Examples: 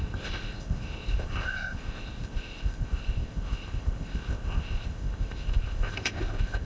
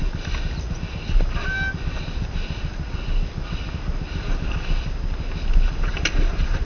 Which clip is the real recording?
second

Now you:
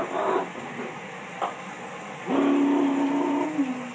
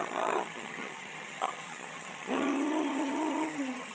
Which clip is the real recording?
first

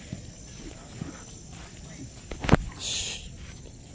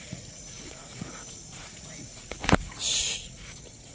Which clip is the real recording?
first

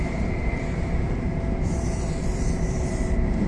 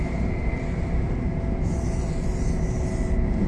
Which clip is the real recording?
second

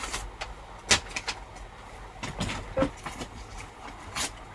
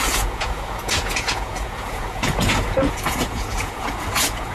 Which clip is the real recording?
first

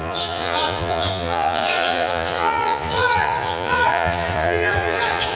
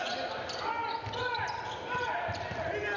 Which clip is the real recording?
second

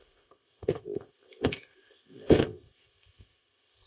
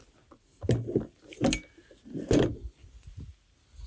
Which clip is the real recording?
second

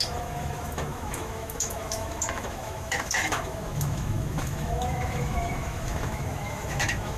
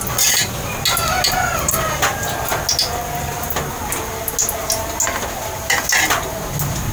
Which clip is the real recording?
second